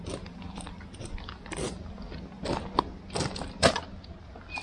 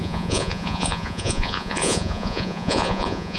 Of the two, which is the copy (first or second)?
second